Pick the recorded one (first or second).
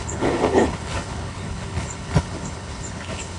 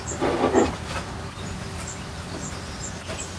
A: second